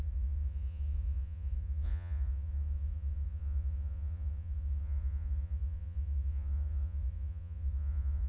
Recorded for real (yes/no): no